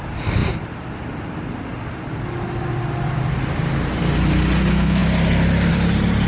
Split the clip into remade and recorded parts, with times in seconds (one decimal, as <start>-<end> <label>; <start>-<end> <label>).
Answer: 0.0-6.3 recorded